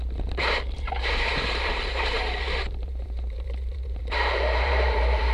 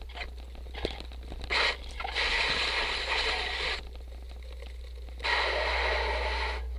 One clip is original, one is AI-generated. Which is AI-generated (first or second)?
first